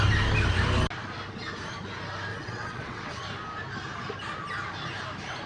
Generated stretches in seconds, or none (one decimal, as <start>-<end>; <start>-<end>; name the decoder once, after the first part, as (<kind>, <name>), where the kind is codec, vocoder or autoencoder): 2.3-3.2 (vocoder, WaveNeXt)